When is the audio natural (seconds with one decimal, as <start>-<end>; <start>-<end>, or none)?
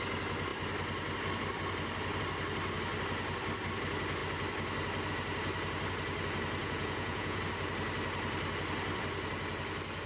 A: 0.0-6.6; 7.4-10.1